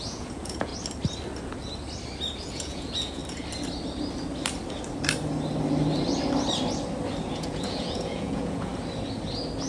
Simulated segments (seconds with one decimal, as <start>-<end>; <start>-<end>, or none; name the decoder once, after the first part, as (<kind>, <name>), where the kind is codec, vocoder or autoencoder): 0.0-0.7 (vocoder, Vocos); 2.5-3.2; 7.3-8.7